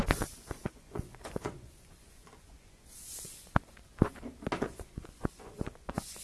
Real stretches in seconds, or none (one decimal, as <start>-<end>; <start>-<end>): 4.0-4.6